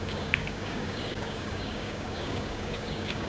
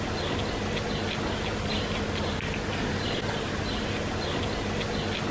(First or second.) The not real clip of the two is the first